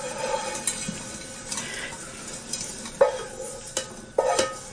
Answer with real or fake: real